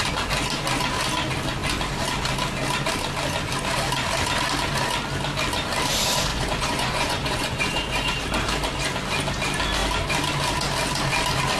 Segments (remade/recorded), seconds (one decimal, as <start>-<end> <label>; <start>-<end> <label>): 0.0-6.3 recorded; 6.3-8.2 remade; 8.2-11.6 recorded